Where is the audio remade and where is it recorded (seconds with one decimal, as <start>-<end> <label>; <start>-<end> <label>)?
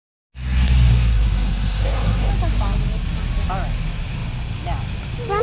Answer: 0.0-0.9 recorded; 0.9-2.3 remade; 2.3-5.4 recorded